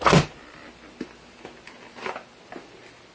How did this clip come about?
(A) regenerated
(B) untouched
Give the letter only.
B